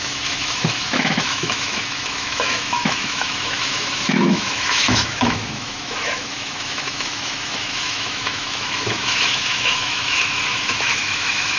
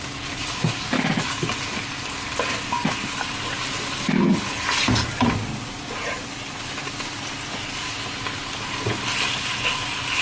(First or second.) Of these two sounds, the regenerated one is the first